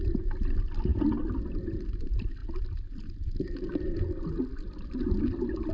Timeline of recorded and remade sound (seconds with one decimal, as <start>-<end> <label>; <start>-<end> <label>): 0.0-5.7 recorded